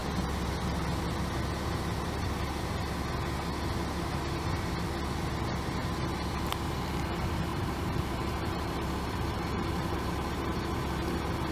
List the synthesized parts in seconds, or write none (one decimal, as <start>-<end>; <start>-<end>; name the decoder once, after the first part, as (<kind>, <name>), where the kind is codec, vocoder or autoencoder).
7.5-10.6 (vocoder, BigVGAN v2)